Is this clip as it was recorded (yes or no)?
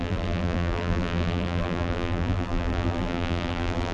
no